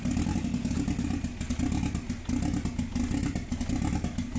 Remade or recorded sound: recorded